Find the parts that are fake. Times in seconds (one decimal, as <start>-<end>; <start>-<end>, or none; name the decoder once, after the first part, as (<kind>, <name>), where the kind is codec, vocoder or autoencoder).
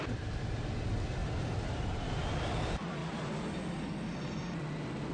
1.2-2.1 (vocoder, BigVGAN v2)